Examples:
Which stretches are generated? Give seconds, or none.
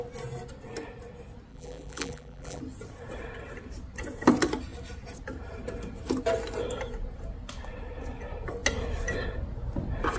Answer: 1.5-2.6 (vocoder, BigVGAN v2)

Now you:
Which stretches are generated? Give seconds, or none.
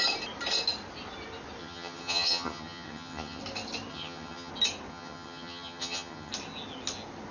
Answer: 1.6-3.4 (vocoder, HiFi-GAN); 3.9-4.5; 4.9-6.3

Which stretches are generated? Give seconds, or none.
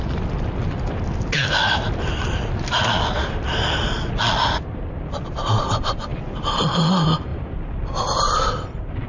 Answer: 6.1-6.8 (vocoder, BigVGAN v2); 7.3-8.2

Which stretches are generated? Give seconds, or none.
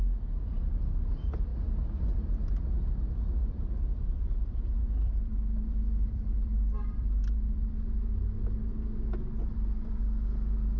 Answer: 3.4-7.5 (vocoder, BigVGAN v2)